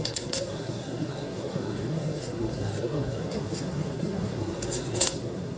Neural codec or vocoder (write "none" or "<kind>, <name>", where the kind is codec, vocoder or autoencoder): codec, SNAC